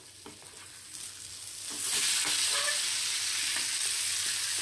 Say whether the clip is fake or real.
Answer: real